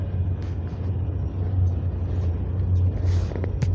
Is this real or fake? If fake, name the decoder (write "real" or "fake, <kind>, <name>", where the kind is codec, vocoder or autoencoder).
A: real